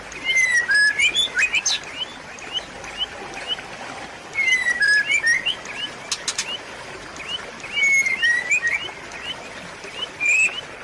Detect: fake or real real